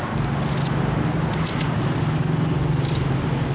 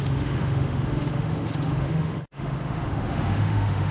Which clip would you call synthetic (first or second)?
second